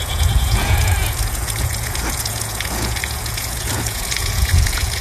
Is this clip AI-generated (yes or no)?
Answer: yes